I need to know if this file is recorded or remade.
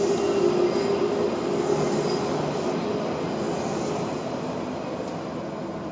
recorded